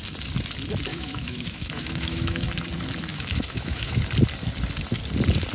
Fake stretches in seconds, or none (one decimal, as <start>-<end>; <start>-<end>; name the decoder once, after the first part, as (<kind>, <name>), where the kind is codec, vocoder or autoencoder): 0.9-2.4 (autoencoder, DAC-VAE); 3.1-4.0